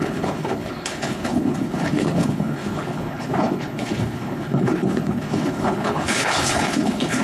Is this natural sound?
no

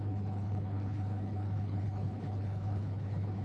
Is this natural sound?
no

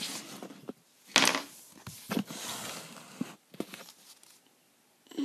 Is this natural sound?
yes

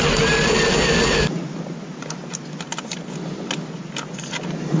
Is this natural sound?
yes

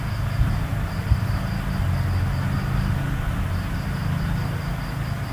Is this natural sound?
yes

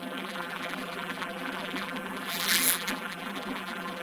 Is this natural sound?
no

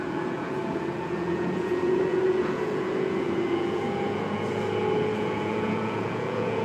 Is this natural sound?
no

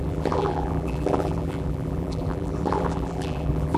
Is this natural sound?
no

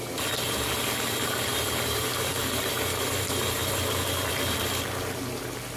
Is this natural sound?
no